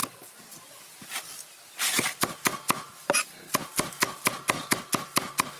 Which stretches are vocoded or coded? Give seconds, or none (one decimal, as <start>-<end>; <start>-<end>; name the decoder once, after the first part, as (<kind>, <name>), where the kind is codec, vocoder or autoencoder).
none